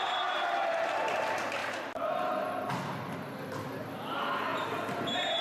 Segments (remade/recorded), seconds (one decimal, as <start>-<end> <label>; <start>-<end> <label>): 0.0-1.6 recorded; 1.6-2.7 remade; 2.7-5.4 recorded